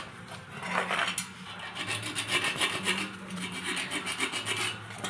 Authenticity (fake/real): real